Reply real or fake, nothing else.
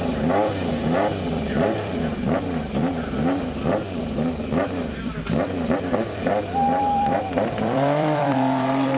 fake